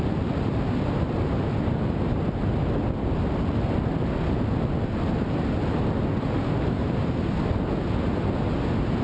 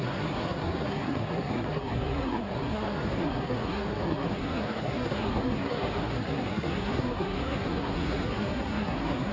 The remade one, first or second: second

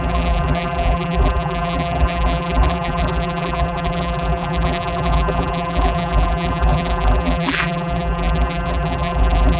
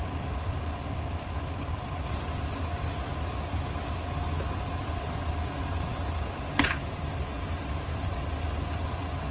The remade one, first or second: first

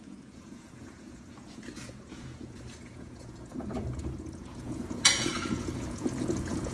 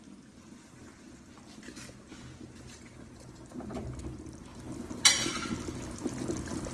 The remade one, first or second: first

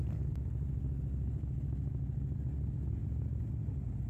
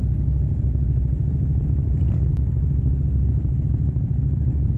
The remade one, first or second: second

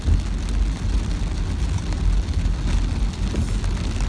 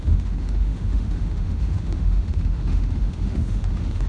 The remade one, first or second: second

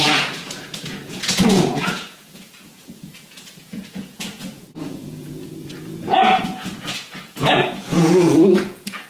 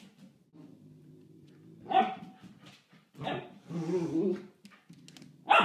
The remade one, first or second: first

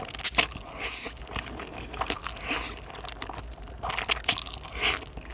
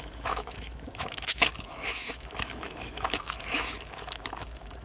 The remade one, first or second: second